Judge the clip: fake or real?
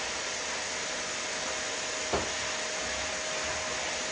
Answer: real